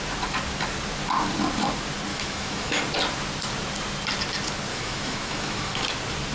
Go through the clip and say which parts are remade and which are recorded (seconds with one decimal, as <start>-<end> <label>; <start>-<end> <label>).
0.0-2.1 recorded; 2.1-2.8 remade; 2.8-4.7 recorded; 4.7-5.8 remade; 5.8-6.3 recorded